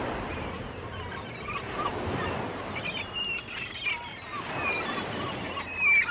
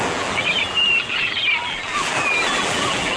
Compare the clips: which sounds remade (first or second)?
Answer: second